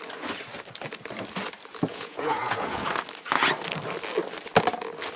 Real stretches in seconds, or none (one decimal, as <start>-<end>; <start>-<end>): 0.0-1.9; 2.9-5.2